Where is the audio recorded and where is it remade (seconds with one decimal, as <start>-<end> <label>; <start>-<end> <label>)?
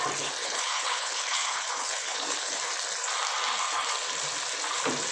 0.0-0.4 recorded; 0.4-2.6 remade; 2.6-5.1 recorded